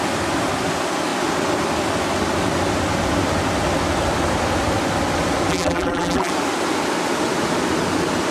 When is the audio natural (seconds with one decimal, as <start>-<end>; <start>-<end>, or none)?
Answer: 0.0-5.5; 6.3-8.3